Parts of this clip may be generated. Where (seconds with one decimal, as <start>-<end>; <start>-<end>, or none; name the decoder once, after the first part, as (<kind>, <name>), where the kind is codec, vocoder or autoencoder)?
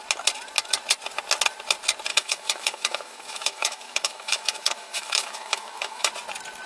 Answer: 2.1-6.1 (autoencoder, DAC-VAE)